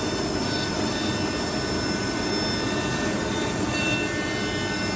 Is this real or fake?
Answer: real